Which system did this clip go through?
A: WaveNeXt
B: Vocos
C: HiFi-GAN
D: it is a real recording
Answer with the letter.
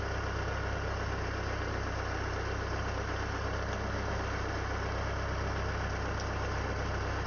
D